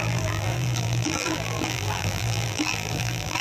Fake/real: fake